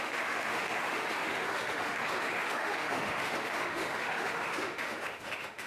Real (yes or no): no